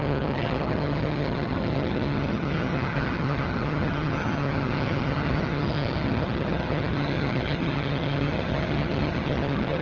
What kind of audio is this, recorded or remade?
remade